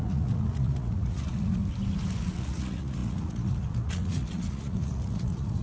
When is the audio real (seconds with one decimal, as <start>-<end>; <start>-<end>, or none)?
1.6-2.1